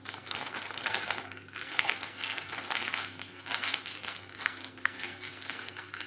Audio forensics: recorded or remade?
remade